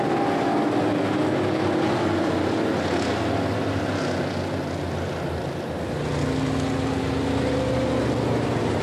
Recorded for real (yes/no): yes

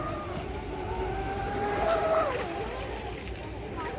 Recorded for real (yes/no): yes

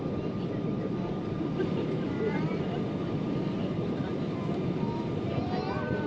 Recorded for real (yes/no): no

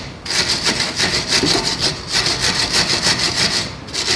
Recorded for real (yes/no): no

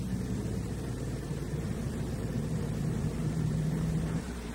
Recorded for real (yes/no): no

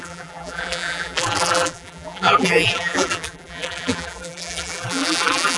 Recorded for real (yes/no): no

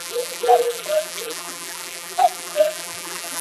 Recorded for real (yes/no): no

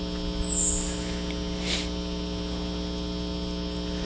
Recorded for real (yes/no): yes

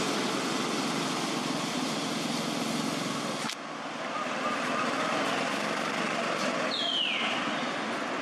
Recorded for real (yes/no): yes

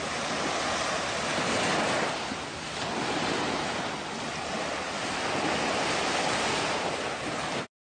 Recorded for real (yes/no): yes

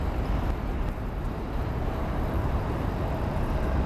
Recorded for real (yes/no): no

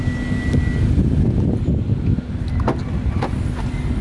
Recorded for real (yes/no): yes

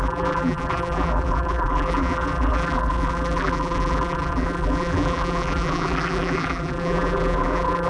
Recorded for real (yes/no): no